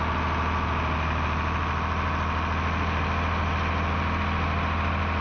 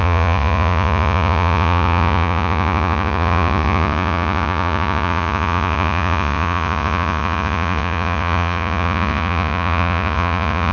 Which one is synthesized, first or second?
second